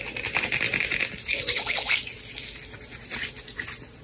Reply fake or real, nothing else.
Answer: real